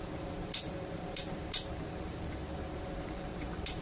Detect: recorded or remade remade